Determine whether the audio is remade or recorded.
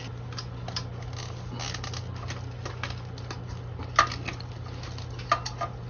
recorded